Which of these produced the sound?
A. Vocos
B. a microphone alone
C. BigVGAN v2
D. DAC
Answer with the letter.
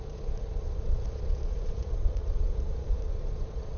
A